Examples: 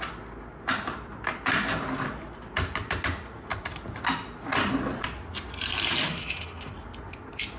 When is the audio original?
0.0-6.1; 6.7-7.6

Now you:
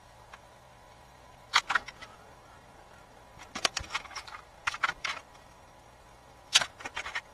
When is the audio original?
none

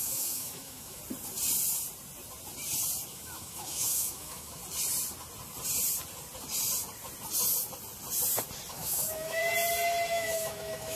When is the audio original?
1.0-3.1; 4.6-8.7; 9.4-10.1

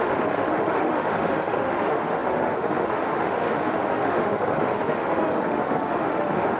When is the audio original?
none

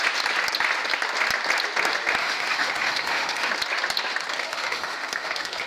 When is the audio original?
0.0-2.2; 3.5-4.4

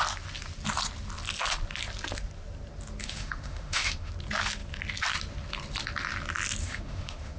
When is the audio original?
0.0-3.0; 4.1-6.6